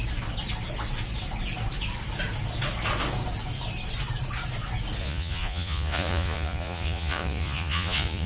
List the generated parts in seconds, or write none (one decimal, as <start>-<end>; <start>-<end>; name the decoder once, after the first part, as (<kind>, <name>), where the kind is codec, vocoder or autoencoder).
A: 5.0-8.3 (vocoder, Vocos)

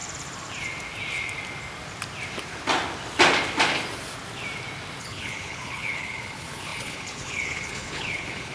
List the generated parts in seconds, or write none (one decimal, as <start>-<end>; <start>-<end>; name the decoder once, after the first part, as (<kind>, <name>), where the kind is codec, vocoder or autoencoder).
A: 5.0-8.5 (codec, HILCodec)